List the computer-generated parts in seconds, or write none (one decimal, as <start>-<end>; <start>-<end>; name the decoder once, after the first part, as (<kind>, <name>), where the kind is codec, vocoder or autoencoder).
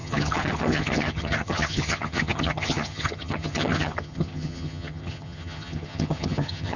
0.0-6.8 (vocoder, HiFi-GAN)